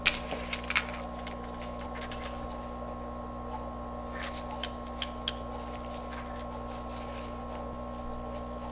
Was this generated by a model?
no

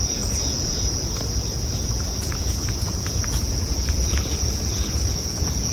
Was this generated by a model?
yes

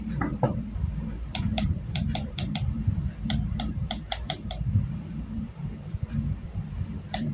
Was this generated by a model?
yes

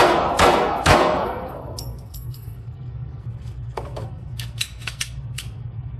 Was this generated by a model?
yes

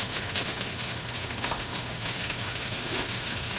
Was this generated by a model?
yes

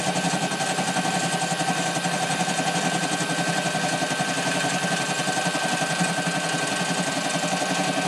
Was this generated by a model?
no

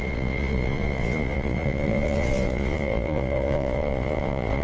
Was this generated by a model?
yes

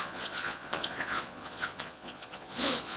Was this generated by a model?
yes